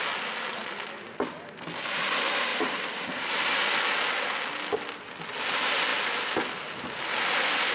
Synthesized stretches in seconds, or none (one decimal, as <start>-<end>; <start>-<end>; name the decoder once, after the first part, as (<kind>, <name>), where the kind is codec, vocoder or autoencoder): 2.5-3.8 (vocoder, BigVGAN v2)